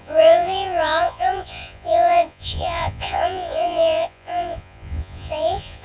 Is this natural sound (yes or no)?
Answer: no